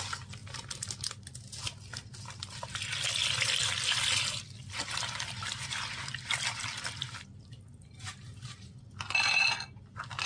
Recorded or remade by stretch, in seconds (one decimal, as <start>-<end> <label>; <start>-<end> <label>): 0.0-10.3 recorded